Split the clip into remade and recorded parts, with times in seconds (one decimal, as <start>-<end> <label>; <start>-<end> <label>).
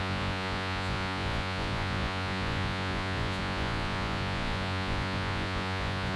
0.0-6.2 remade